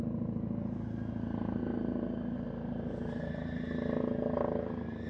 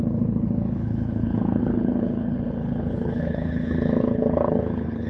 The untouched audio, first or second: first